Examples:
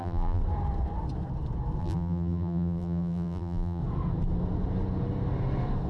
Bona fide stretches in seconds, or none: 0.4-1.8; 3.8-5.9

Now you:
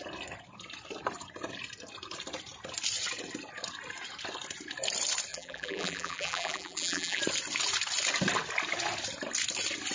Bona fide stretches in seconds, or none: 0.0-5.3; 7.2-9.9

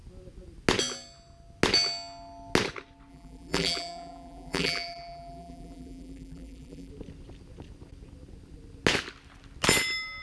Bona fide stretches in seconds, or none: 0.0-3.1; 6.9-10.2

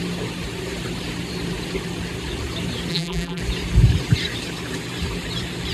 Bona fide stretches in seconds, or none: 0.0-2.9; 3.4-5.7

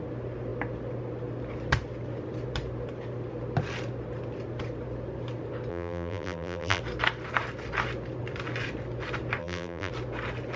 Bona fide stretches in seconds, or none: 0.0-5.7; 6.8-9.4; 9.9-10.6

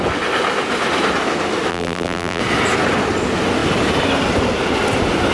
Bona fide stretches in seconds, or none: 0.0-1.7; 2.4-5.3

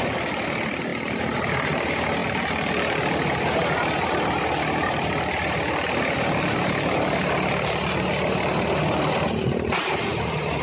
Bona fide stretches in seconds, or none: 0.0-10.1

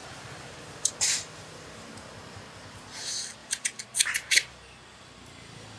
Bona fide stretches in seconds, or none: 0.9-3.4; 4.5-5.8